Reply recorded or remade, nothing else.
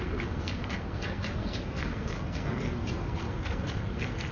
remade